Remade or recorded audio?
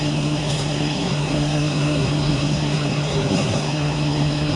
remade